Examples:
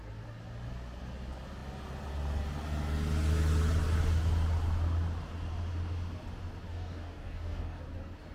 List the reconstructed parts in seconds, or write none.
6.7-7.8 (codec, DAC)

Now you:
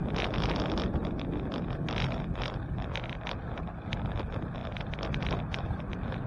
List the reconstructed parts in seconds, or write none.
none

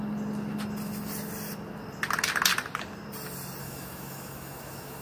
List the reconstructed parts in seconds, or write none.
3.6-5.0 (autoencoder, DAC-VAE)

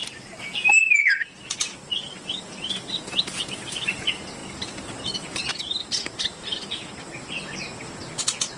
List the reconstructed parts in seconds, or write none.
none